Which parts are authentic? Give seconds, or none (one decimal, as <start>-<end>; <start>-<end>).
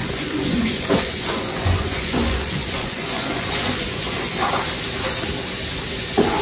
4.3-6.0